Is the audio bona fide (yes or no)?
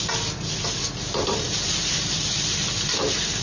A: yes